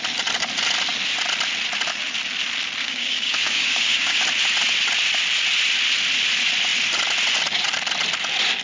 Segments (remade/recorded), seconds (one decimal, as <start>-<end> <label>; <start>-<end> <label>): 0.0-2.8 recorded; 2.8-4.2 remade; 4.2-8.6 recorded